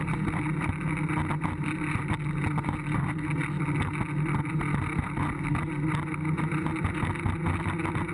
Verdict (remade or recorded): recorded